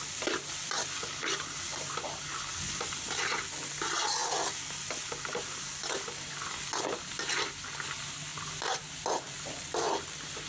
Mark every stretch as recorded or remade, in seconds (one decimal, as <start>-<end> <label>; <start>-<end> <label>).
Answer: 0.0-10.5 recorded

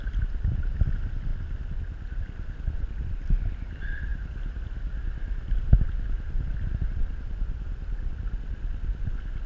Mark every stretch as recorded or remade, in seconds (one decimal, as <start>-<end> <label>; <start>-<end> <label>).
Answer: 0.0-9.5 recorded

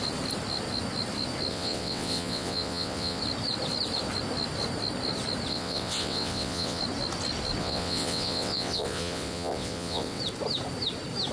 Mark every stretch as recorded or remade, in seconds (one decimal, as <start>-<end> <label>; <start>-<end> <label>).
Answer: 0.0-1.5 recorded; 1.5-3.2 remade; 3.2-5.5 recorded; 5.5-6.8 remade; 6.8-7.6 recorded; 7.6-10.2 remade; 10.2-11.3 recorded

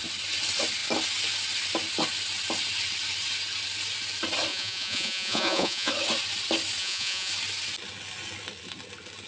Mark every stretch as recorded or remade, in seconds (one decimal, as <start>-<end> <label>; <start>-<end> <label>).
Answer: 0.0-4.5 recorded; 4.5-5.9 remade; 5.9-6.8 recorded; 6.8-7.3 remade; 7.3-9.3 recorded

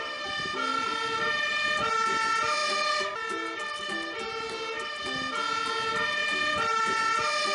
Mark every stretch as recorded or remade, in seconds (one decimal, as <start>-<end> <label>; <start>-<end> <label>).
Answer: 0.0-0.7 recorded; 0.7-1.9 remade; 1.9-6.2 recorded; 6.2-6.8 remade; 6.8-7.5 recorded

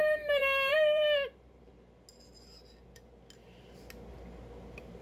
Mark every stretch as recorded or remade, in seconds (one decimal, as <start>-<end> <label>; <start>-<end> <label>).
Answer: 0.0-1.7 remade; 1.7-5.0 recorded